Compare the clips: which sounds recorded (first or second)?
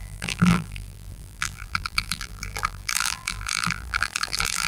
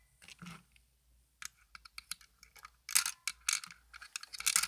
second